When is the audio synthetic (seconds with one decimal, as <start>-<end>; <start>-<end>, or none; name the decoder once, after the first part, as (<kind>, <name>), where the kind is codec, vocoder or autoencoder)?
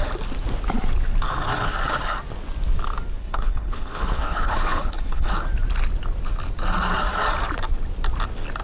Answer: 3.2-5.3 (codec, HILCodec)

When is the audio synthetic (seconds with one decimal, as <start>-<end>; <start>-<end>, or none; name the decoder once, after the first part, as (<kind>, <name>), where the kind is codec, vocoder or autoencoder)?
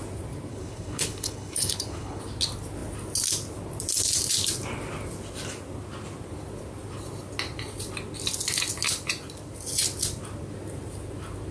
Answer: 0.5-2.2 (codec, HILCodec)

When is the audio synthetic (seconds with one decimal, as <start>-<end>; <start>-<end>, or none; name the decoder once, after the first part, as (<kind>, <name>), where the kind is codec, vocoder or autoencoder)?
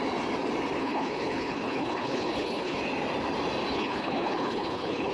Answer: 0.8-2.8 (codec, HILCodec); 3.7-5.1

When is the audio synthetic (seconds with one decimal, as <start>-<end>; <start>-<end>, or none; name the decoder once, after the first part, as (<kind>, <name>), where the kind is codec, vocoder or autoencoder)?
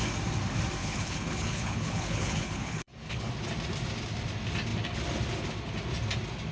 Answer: 0.8-3.3 (codec, HILCodec)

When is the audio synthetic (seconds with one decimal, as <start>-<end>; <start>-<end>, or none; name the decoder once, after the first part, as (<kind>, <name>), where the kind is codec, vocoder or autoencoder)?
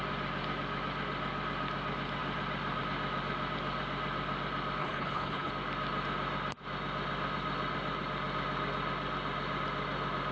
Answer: 4.8-5.5 (codec, HILCodec)